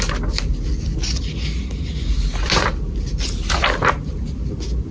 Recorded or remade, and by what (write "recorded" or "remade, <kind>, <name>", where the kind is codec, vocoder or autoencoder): recorded